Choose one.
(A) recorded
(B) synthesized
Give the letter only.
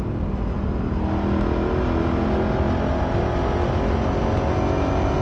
A